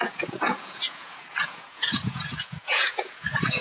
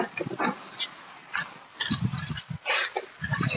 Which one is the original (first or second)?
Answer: second